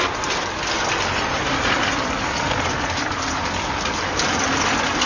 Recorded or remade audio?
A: recorded